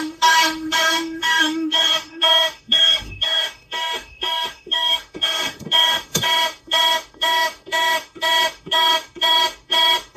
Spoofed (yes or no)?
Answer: yes